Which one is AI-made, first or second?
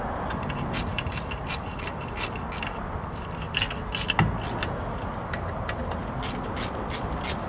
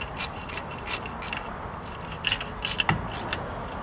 second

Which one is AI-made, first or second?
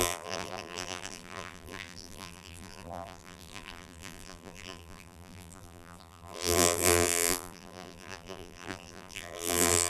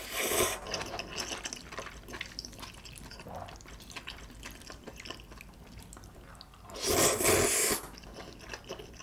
first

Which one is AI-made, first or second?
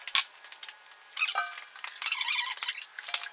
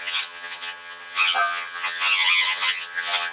second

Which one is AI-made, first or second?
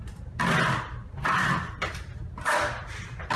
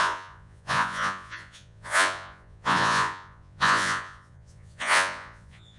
second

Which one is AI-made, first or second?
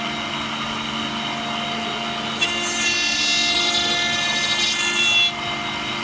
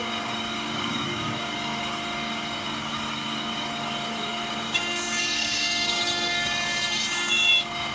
second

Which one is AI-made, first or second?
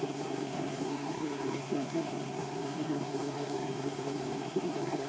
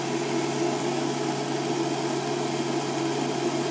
first